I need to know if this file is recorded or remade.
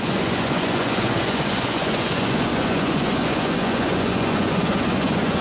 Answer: remade